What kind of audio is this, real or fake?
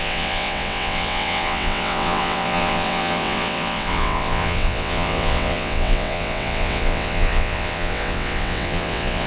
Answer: fake